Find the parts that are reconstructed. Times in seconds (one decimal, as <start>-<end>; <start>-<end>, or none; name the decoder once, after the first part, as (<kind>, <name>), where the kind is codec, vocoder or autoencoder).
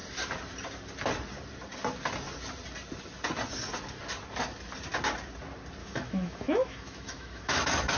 5.8-7.6 (autoencoder, DAC-VAE)